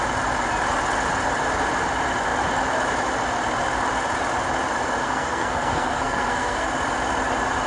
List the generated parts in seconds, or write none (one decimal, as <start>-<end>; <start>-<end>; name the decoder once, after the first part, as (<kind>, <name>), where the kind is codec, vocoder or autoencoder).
5.0-6.7 (codec, SNAC)